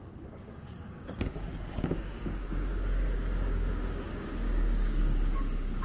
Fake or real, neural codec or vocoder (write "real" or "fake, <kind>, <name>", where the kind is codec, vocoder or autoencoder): fake, codec, DAC